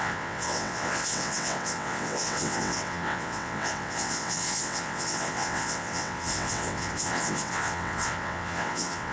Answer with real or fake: fake